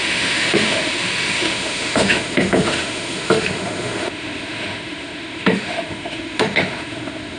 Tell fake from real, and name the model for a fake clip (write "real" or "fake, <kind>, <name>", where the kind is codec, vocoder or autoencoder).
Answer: fake, autoencoder, DAC-VAE